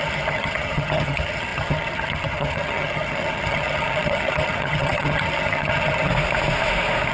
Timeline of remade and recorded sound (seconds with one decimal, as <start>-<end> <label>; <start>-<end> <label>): 0.0-6.1 remade; 6.1-7.1 recorded